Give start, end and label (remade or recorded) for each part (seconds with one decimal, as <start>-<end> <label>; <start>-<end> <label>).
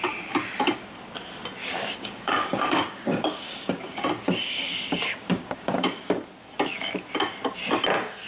0.0-1.6 recorded; 1.6-6.1 remade; 6.1-8.3 recorded